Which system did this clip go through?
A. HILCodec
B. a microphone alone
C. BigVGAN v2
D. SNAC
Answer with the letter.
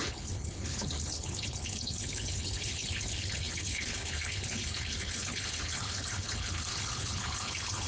A